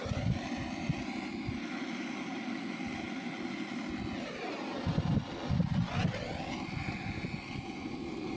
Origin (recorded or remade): recorded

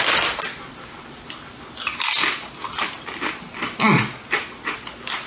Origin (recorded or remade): recorded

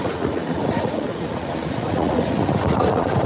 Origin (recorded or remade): remade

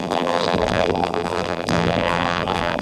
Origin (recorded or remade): remade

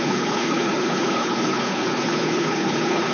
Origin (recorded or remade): remade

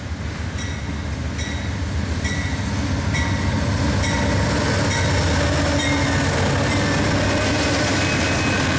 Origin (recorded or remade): recorded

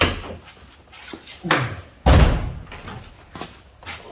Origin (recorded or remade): recorded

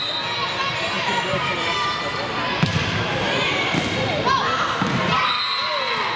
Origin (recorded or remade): recorded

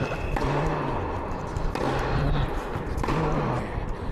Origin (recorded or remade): recorded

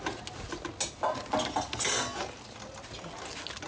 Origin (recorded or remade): recorded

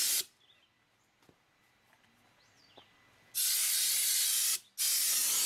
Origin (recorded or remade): recorded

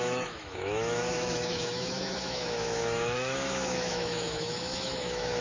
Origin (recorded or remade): remade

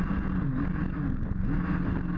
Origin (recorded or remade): recorded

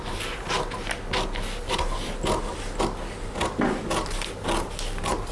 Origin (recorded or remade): recorded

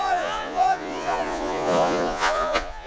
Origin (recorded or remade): remade